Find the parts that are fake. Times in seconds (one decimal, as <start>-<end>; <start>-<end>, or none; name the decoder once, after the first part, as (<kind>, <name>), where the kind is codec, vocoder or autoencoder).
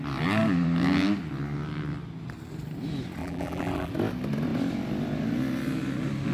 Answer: 3.2-3.9 (vocoder, BigVGAN v2)